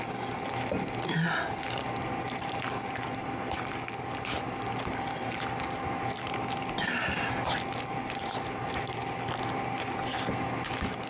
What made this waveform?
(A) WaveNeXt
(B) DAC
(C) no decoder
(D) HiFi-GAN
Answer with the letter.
C